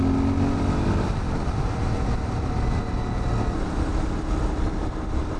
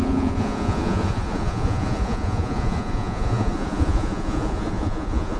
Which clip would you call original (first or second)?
first